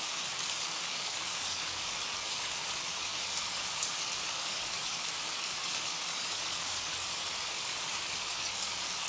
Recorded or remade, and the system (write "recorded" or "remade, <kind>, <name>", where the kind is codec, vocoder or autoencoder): remade, codec, DAC